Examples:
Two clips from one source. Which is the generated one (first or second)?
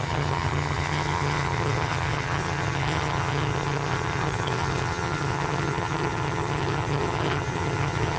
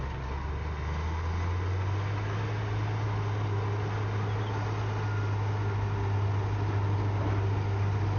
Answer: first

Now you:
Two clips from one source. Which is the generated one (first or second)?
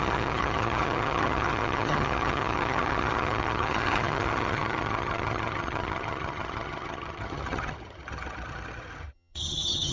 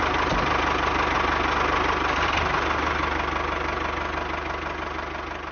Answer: first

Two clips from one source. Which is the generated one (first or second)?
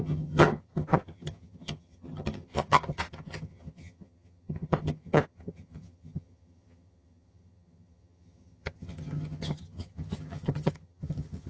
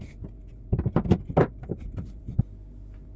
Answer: first